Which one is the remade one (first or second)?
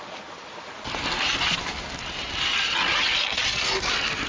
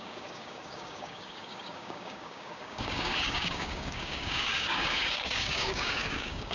second